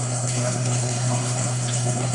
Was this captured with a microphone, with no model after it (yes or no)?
no